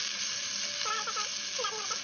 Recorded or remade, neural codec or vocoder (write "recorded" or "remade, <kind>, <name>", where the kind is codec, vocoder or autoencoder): recorded